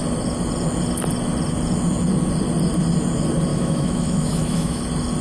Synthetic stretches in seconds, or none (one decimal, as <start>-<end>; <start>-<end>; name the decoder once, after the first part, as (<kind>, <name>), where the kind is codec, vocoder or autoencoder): 3.5-4.8 (autoencoder, DAC-VAE)